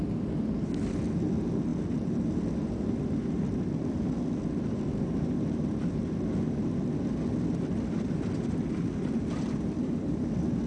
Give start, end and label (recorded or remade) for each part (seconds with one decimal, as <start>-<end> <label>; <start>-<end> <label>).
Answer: 0.0-10.7 recorded